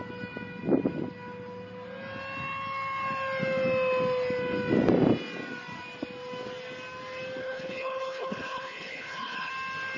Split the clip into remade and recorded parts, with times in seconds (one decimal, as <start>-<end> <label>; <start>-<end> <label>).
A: 0.0-7.4 recorded; 7.4-9.5 remade; 9.5-10.0 recorded